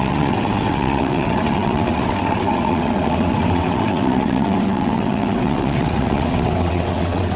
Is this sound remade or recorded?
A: remade